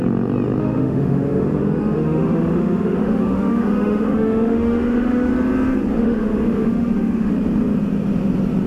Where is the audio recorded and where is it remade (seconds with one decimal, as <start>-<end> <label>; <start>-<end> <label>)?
0.0-0.6 recorded; 0.6-5.3 remade; 5.3-6.0 recorded; 6.0-7.3 remade; 7.3-8.7 recorded